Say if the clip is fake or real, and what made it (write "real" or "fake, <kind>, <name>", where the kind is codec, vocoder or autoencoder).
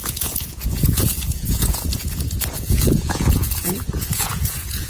fake, vocoder, Vocos